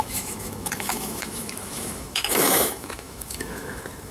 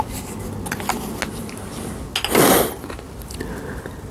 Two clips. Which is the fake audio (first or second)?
first